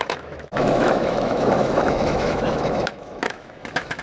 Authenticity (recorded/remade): remade